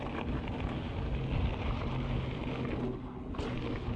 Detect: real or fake real